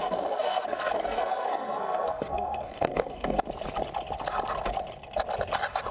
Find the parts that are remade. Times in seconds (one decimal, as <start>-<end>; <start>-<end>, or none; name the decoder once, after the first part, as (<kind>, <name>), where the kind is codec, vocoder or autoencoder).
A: 0.0-3.4 (codec, SNAC)